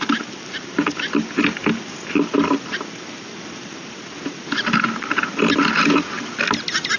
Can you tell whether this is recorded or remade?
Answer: recorded